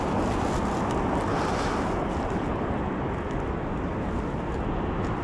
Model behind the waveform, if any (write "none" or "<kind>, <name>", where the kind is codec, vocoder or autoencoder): none